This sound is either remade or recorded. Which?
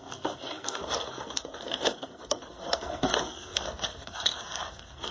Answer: remade